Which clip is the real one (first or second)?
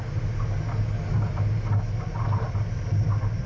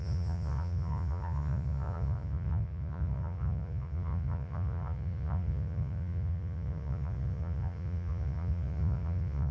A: first